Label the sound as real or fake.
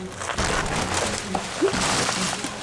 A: real